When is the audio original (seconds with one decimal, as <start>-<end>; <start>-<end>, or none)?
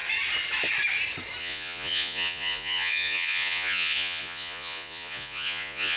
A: 0.0-1.4